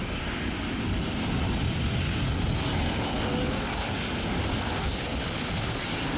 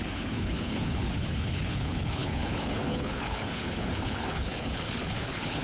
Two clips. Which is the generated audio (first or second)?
second